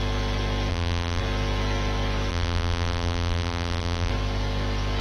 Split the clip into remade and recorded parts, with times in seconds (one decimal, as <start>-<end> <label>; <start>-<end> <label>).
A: 0.0-0.7 recorded; 0.7-1.2 remade; 1.2-2.3 recorded; 2.3-4.1 remade; 4.1-5.0 recorded